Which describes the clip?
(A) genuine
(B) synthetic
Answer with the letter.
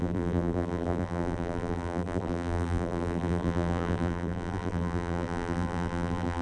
B